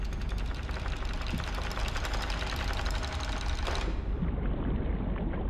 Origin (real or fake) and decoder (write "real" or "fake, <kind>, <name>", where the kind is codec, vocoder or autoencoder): real